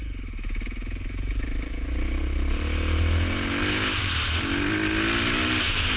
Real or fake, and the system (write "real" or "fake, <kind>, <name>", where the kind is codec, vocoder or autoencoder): real